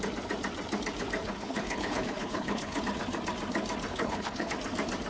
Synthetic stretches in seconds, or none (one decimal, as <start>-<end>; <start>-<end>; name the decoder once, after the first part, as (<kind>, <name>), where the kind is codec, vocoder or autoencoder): 1.2-2.8 (codec, HILCodec); 3.9-4.5